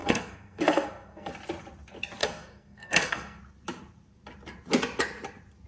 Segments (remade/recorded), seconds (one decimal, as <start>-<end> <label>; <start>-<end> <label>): 0.0-1.3 remade; 1.3-2.2 recorded; 2.2-3.4 remade; 3.4-5.7 recorded